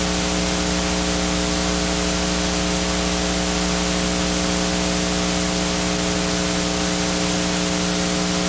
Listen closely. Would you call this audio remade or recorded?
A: recorded